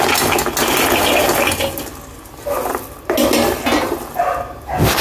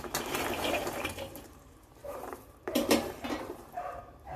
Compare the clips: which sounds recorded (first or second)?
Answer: first